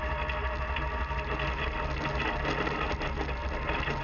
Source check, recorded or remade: recorded